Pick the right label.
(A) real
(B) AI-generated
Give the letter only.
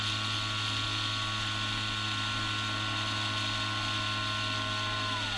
A